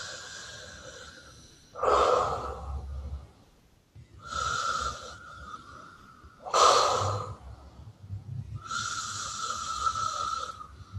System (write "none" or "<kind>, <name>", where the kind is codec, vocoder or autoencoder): none